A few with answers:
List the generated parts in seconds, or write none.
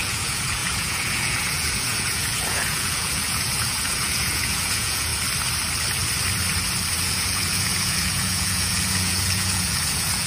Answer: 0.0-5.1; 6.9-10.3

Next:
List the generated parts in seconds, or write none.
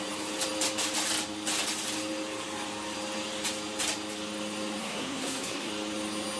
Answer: 4.8-5.7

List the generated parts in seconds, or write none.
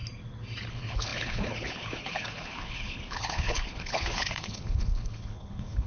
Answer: 0.7-5.9